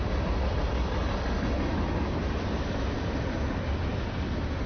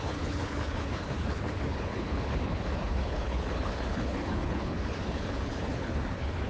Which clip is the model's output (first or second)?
second